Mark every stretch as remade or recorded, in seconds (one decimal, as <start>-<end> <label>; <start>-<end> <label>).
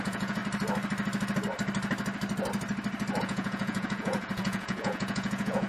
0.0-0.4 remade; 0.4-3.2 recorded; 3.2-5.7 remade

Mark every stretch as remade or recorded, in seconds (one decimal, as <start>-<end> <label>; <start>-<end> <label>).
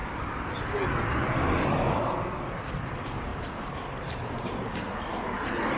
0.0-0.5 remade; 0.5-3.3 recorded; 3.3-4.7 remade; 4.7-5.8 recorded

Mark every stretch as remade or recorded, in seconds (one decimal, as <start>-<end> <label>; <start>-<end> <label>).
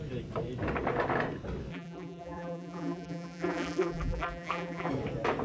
0.0-1.7 recorded; 1.7-4.9 remade; 4.9-5.4 recorded